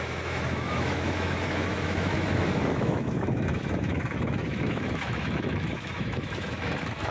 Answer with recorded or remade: remade